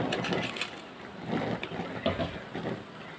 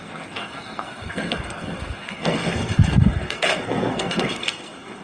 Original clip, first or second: first